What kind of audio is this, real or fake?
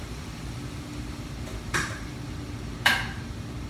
fake